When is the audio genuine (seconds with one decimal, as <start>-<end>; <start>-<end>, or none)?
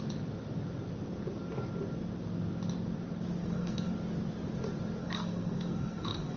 0.0-3.4; 3.9-5.0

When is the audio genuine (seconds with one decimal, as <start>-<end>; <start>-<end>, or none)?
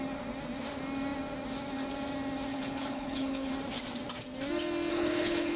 0.0-2.5; 3.5-4.9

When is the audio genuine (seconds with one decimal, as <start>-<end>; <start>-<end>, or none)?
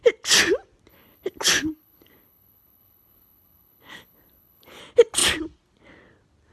0.0-0.9; 4.8-6.5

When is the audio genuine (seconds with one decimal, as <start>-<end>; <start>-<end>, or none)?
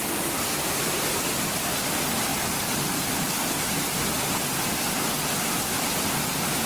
0.0-6.7